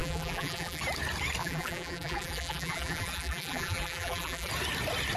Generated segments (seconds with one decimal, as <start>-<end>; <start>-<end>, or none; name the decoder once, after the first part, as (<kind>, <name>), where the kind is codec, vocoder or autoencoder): 0.0-0.8 (vocoder, BigVGAN v2); 1.4-4.5